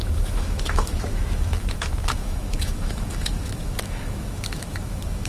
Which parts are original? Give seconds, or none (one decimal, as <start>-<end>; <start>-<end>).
none